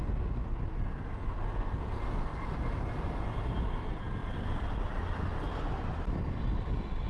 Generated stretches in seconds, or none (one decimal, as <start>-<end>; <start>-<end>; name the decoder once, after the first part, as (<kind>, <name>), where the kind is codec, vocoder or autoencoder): none